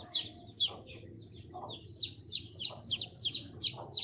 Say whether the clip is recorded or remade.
recorded